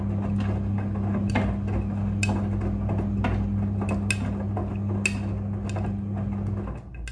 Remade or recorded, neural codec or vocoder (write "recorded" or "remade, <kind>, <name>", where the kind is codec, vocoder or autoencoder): recorded